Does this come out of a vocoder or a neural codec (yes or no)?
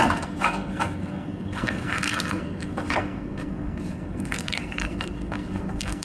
yes